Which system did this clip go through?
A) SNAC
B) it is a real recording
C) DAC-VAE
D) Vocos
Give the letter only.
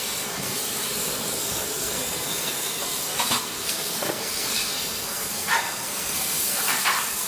A